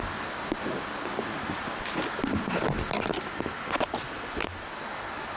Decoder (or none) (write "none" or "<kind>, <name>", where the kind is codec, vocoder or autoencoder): none